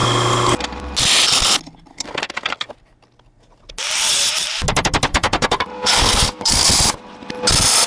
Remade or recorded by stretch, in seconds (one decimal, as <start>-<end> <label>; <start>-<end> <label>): 0.0-1.9 recorded; 1.9-2.7 remade; 2.7-5.1 recorded; 5.1-6.7 remade; 6.7-7.9 recorded

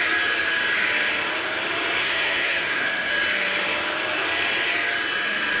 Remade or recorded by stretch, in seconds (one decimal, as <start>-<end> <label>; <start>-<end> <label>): 0.0-2.0 recorded; 2.0-3.1 remade; 3.1-5.6 recorded

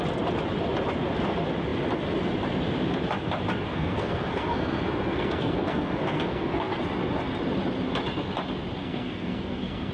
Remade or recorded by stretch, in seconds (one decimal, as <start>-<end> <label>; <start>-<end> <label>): 0.0-3.7 recorded; 3.7-6.8 remade; 6.8-8.8 recorded; 8.8-9.9 remade

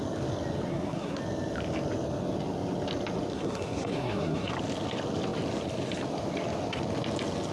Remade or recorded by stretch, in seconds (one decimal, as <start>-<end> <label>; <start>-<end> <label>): 0.0-0.7 recorded; 0.7-1.2 remade; 1.2-3.3 recorded; 3.3-4.5 remade; 4.5-7.5 recorded

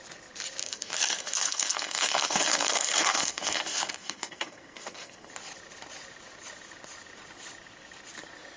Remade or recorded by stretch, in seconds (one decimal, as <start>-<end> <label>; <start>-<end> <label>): 0.0-0.6 recorded; 0.6-5.3 remade; 5.3-8.6 recorded

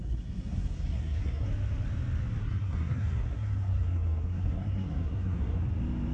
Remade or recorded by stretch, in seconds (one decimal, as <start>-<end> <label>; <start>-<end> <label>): 0.0-1.5 remade; 1.5-2.4 recorded; 2.4-5.6 remade; 5.6-6.1 recorded